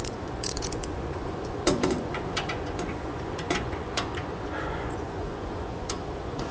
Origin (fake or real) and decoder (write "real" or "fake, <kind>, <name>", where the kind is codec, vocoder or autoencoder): fake, vocoder, Vocos